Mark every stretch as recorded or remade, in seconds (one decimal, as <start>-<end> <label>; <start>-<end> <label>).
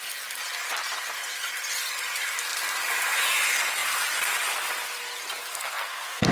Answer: 0.0-5.4 recorded; 5.4-6.3 remade